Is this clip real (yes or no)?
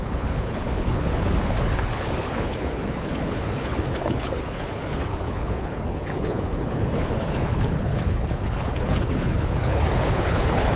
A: no